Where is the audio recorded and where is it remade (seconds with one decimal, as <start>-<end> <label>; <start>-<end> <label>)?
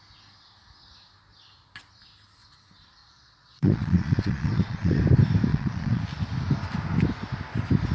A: 0.0-3.0 recorded; 3.0-5.0 remade; 5.0-5.5 recorded; 5.5-6.0 remade; 6.0-7.9 recorded